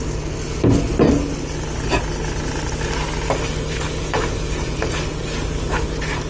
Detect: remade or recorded recorded